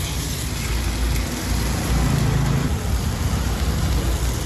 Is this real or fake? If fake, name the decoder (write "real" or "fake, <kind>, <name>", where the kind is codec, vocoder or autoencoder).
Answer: real